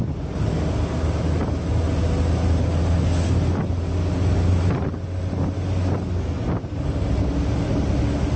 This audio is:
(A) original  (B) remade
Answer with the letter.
A